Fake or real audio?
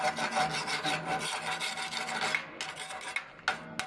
real